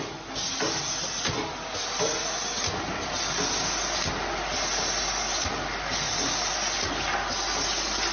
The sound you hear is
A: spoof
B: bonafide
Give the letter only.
B